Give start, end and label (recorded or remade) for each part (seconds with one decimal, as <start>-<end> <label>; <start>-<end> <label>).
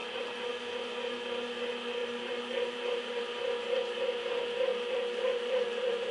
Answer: 0.0-0.5 remade; 0.5-2.0 recorded; 2.0-3.2 remade; 3.2-4.7 recorded; 4.7-6.1 remade